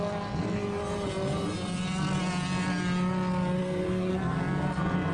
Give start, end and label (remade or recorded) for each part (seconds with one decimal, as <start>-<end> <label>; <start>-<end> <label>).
0.0-3.6 recorded; 3.6-4.1 remade; 4.1-5.1 recorded